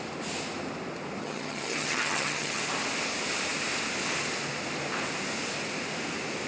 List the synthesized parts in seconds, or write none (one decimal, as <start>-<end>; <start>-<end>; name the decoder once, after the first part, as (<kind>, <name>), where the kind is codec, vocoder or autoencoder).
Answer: 1.2-2.6 (vocoder, HiFi-GAN)